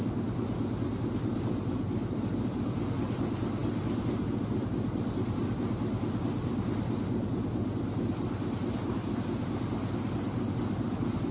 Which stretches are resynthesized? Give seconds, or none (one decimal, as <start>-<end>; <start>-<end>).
none